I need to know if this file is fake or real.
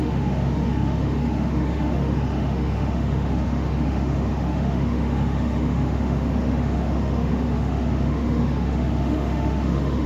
fake